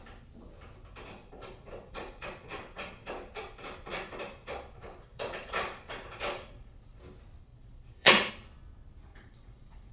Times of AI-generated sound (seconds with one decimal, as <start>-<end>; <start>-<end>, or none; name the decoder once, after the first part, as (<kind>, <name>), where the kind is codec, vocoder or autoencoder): 1.2-3.1 (vocoder, Vocos); 3.9-7.0; 7.5-8.3; 9.1-9.9